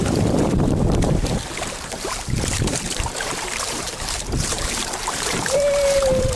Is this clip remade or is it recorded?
remade